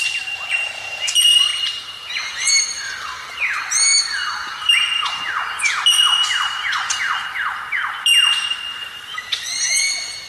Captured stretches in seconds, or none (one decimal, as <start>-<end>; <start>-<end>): 0.0-1.5; 2.1-8.8; 9.6-10.3